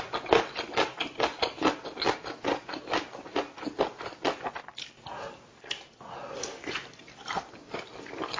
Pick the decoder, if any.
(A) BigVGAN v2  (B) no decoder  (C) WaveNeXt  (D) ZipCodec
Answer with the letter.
B